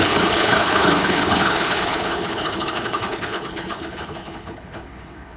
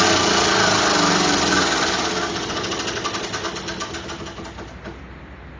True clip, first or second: second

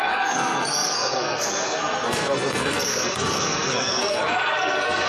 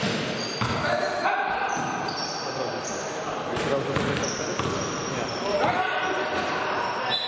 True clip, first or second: second